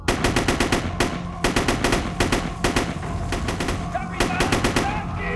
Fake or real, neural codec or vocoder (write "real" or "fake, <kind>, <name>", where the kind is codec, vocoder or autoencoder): real